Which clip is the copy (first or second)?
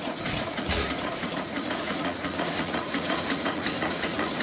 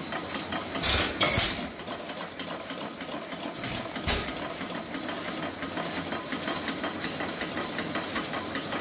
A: first